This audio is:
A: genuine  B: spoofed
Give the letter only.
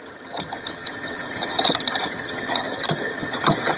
B